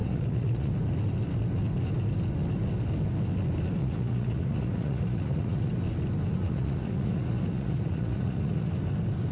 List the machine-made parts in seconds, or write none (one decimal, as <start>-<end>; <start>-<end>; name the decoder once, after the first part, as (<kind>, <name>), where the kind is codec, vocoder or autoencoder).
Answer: 0.0-0.7 (vocoder, Vocos); 3.8-5.7; 6.3-8.7